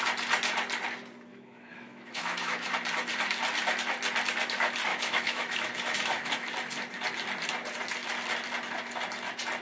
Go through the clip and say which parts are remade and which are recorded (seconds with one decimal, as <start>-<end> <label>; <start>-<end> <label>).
0.0-1.3 recorded; 1.3-2.7 remade; 2.7-4.9 recorded; 4.9-6.3 remade; 6.3-9.6 recorded